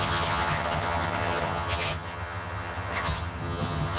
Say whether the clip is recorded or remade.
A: remade